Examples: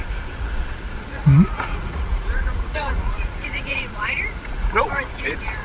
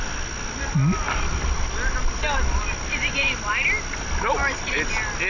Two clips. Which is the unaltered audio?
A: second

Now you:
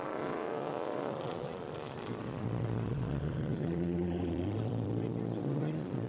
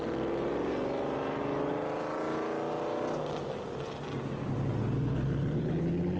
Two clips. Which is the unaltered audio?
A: second